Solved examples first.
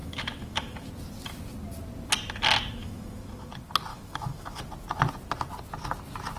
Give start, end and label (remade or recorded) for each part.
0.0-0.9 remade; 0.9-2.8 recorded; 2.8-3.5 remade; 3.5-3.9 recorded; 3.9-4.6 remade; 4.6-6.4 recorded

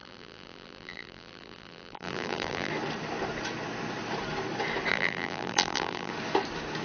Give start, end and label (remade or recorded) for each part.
0.0-2.7 remade; 2.7-4.9 recorded; 4.9-6.1 remade; 6.1-6.8 recorded

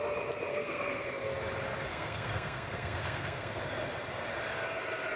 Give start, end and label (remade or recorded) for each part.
0.0-0.5 recorded; 0.5-1.1 remade; 1.1-1.9 recorded; 1.9-3.6 remade; 3.6-5.2 recorded

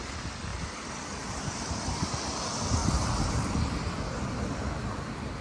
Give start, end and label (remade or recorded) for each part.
0.0-0.5 recorded; 0.5-2.4 remade; 2.4-2.8 recorded; 2.8-3.9 remade; 3.9-5.4 recorded

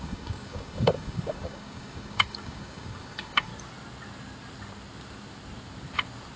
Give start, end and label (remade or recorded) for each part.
0.0-3.5 remade; 3.5-6.4 recorded

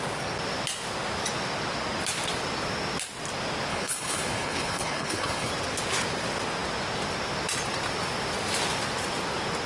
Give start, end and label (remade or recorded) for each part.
0.0-3.7 recorded; 3.7-5.5 remade; 5.5-9.7 recorded

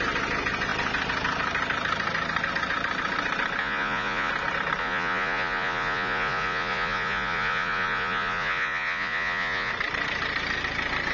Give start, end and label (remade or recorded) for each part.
0.0-3.6 recorded; 3.6-4.3 remade; 4.3-4.8 recorded; 4.8-9.7 remade; 9.7-11.1 recorded

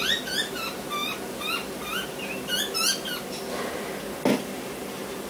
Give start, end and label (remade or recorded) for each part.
0.0-5.3 recorded